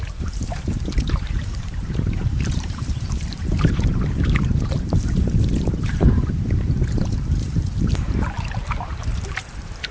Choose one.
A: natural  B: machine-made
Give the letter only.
B